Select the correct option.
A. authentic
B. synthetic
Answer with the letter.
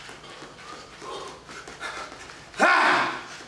A